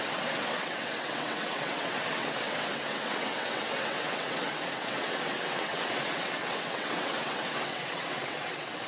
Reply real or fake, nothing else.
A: fake